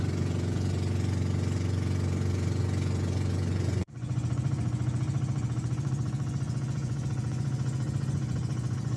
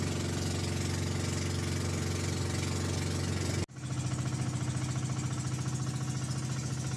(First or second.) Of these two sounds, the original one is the second